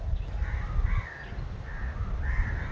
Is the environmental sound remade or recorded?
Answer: recorded